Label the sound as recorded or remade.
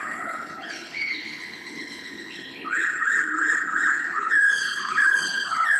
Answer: remade